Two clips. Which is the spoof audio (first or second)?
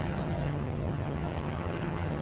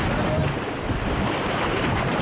first